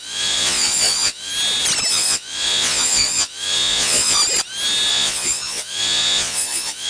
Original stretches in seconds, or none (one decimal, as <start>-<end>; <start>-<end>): 1.3-1.9; 4.2-4.9